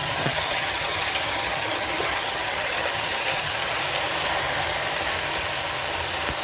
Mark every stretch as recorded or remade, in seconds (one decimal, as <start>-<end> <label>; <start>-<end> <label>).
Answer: 0.0-3.8 remade; 3.8-6.4 recorded